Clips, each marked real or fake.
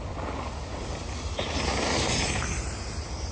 real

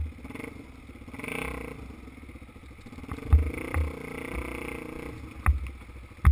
real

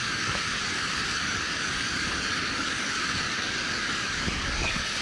fake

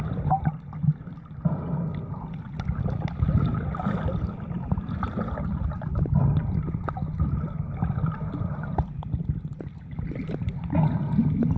real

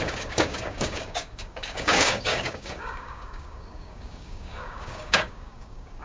fake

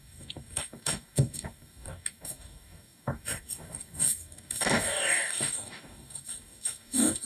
fake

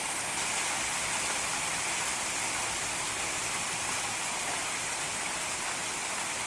real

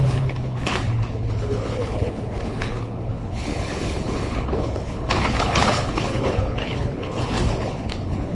fake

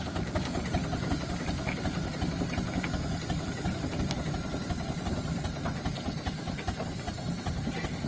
real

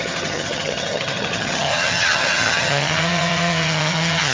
fake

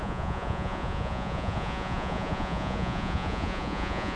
fake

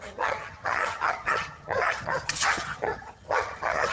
fake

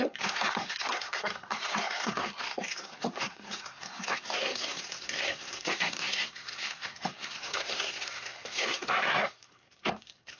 fake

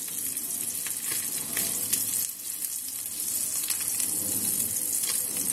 real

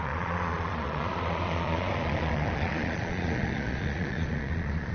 fake